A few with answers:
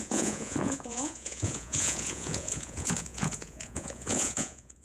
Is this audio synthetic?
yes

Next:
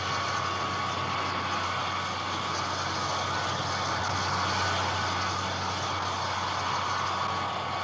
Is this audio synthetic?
no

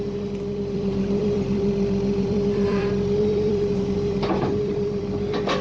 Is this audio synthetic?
yes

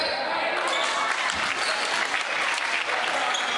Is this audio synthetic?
no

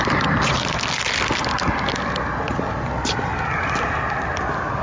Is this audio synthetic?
no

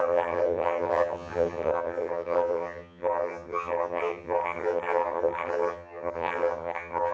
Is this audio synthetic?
yes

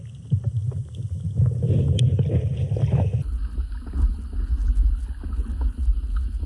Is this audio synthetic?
no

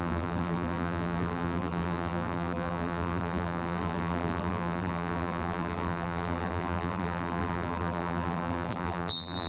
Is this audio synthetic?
yes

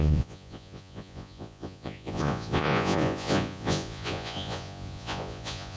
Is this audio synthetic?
yes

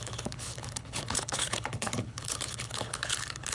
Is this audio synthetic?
yes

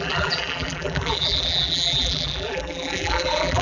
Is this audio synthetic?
yes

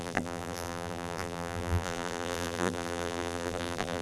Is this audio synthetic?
yes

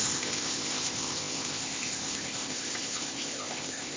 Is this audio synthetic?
yes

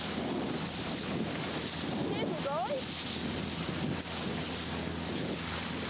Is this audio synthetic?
no